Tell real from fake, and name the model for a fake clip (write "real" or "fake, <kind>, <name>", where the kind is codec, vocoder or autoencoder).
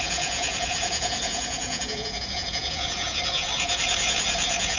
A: fake, vocoder, Vocos